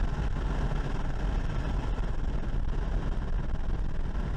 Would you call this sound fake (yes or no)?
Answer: no